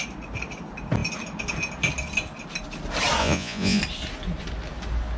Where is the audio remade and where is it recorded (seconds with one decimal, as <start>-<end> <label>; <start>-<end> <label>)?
0.0-3.2 recorded; 3.2-3.8 remade; 3.8-5.2 recorded